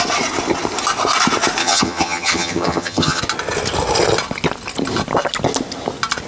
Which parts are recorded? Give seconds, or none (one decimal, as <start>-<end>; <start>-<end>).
0.0-1.6; 3.2-6.3